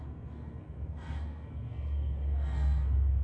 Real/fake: fake